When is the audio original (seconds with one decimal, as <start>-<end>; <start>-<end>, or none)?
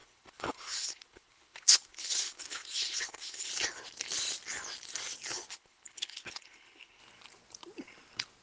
3.5-5.5; 7.0-8.4